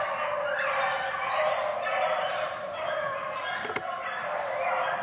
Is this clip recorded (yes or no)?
yes